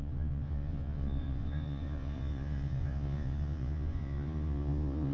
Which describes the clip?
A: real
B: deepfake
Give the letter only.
B